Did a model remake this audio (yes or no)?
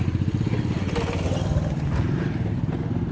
no